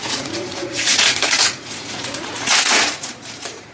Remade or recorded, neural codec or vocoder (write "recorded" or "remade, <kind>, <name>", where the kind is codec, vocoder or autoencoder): remade, vocoder, Vocos